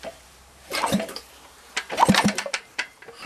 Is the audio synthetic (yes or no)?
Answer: yes